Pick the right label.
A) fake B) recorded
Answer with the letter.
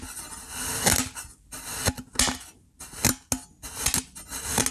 B